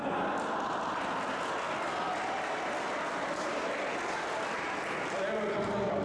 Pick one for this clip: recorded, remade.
recorded